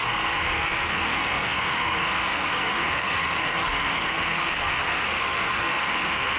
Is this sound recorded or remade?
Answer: remade